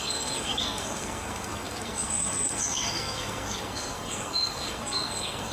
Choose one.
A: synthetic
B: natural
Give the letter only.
A